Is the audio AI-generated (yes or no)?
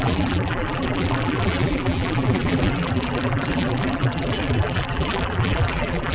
yes